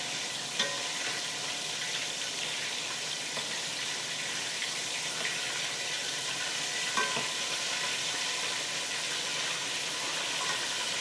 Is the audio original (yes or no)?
yes